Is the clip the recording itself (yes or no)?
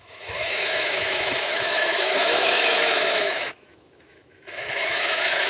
no